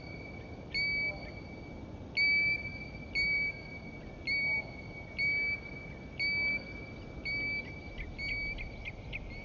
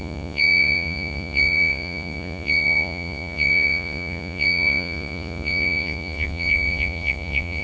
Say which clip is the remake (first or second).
second